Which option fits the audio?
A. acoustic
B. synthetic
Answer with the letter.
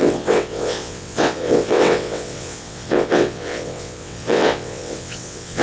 B